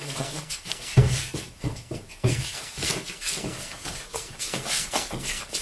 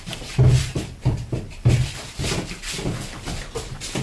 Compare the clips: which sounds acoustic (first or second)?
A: second